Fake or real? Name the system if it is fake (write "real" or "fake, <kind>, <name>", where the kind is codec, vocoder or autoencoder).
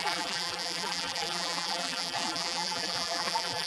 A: fake, vocoder, BigVGAN v2